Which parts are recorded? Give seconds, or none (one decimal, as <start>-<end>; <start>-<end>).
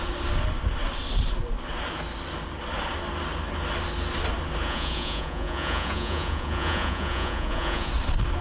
0.0-4.6; 7.9-8.4